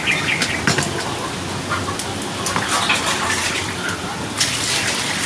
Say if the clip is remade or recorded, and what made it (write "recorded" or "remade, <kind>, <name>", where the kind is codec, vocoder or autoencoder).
recorded